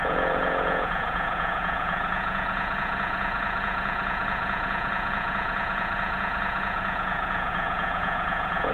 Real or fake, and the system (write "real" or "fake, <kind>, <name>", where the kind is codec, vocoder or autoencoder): fake, vocoder, Vocos